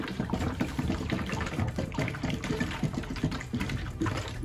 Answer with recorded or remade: remade